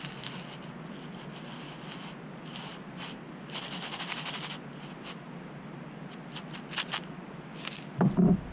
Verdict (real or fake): real